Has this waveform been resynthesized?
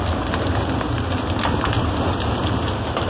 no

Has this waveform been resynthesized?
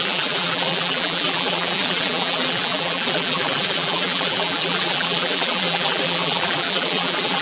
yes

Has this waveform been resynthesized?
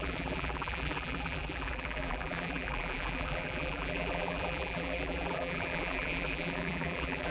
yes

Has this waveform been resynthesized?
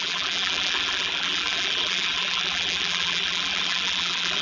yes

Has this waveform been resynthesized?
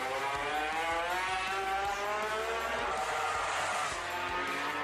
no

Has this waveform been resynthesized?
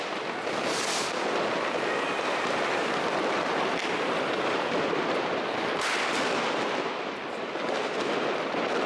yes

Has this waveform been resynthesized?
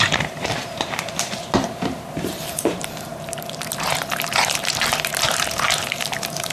yes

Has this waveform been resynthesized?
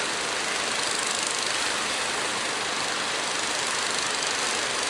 no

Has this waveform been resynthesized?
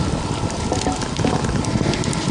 no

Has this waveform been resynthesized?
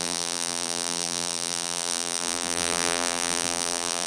yes